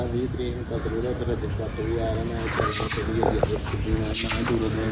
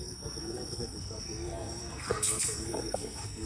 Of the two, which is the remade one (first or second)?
second